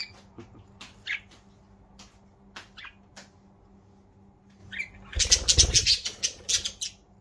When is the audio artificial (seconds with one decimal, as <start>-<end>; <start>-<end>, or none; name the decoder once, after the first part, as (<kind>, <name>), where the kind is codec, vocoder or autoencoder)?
none